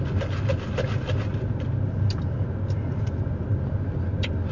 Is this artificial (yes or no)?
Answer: no